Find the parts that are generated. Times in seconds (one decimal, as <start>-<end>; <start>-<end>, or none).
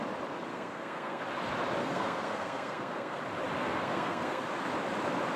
0.5-1.2; 1.8-3.2; 3.6-4.4